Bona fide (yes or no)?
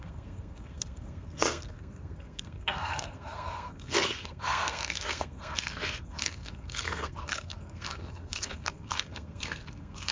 no